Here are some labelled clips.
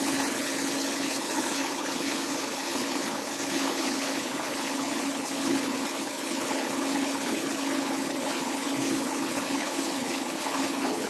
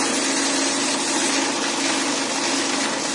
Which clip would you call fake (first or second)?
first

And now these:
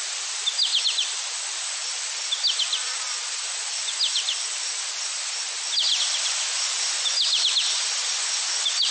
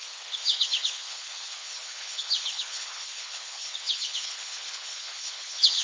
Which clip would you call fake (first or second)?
second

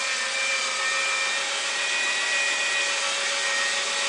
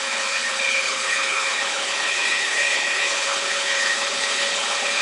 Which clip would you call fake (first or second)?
second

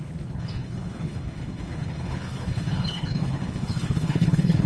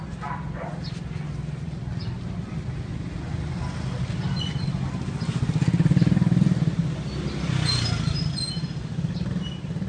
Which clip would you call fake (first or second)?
first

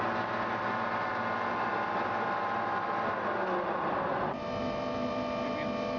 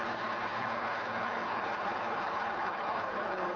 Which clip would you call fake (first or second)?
second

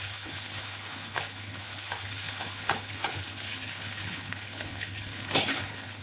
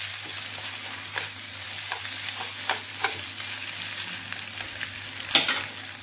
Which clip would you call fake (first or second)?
first